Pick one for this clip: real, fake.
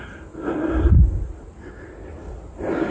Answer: real